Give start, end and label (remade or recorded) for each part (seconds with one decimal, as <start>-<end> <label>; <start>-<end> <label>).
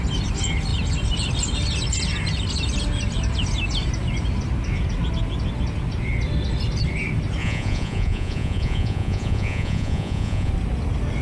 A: 0.0-7.4 recorded; 7.4-10.5 remade; 10.5-11.2 recorded